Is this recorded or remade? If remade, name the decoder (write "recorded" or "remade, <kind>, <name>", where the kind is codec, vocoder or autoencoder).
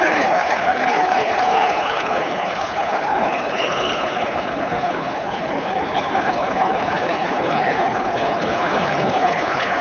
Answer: remade, codec, HILCodec